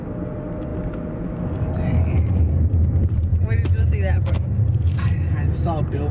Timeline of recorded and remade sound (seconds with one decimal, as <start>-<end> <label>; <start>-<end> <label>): 0.0-6.1 recorded